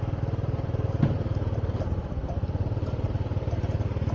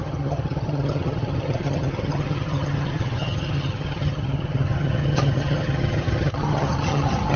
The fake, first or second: second